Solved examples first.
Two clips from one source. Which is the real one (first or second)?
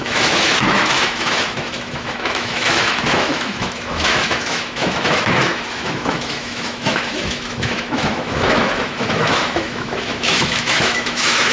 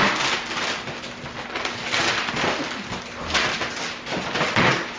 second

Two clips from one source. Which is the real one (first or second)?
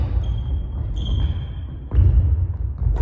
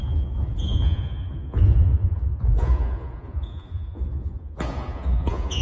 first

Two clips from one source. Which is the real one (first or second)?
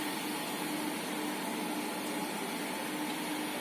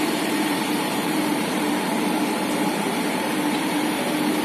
first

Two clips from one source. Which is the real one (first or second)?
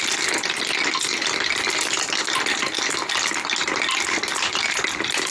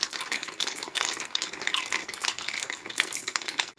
first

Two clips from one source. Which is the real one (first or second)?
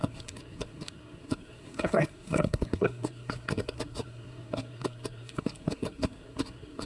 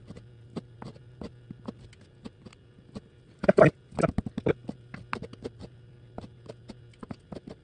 second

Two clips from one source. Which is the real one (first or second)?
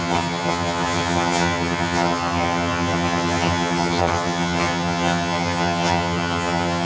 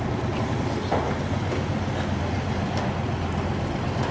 second